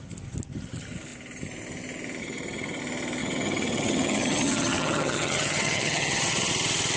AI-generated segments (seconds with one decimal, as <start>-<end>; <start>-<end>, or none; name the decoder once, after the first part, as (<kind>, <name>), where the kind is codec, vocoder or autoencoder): 2.2-2.8 (vocoder, HiFi-GAN); 3.2-6.5